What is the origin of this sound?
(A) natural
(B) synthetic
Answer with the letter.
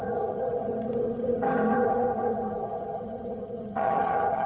B